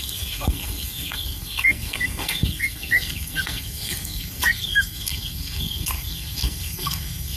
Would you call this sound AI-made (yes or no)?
yes